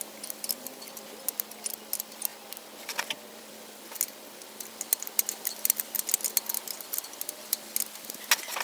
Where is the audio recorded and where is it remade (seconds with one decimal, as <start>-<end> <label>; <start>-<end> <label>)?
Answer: 0.0-8.6 recorded